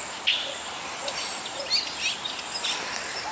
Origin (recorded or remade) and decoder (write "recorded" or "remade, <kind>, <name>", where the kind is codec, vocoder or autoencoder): recorded